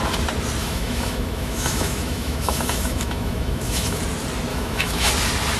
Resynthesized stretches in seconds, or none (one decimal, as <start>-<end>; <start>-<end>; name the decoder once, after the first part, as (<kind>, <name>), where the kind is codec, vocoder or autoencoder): 0.6-4.0 (autoencoder, DAC-VAE); 4.5-5.1